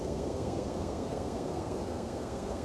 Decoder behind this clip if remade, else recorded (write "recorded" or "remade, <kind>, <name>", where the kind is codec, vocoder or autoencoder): remade, codec, SNAC